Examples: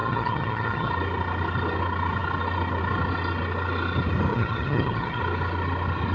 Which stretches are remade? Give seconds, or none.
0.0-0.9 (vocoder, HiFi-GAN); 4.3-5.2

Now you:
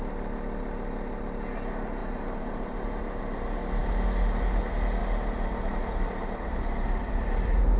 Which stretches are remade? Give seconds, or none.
2.0-3.2 (vocoder, BigVGAN v2); 5.0-7.8

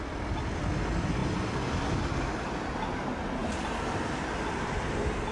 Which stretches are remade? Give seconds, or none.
none

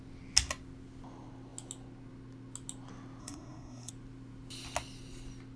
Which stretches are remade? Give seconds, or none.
3.2-3.9 (codec, SNAC)

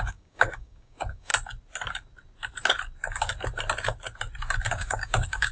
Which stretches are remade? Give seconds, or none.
0.0-1.3 (codec, DAC); 4.6-5.5

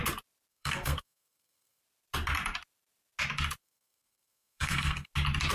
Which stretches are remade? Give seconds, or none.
0.5-1.8 (codec, SNAC); 3.6-5.1

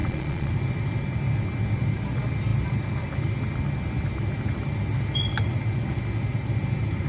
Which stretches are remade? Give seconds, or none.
0.0-0.5 (vocoder, Vocos)